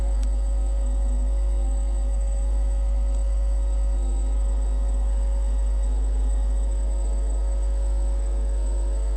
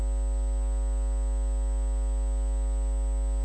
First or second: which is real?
second